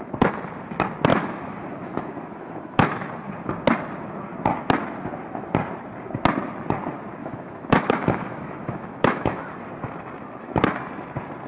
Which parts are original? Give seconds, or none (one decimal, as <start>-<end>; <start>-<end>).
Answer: 0.0-1.1; 3.1-7.2; 9.7-11.5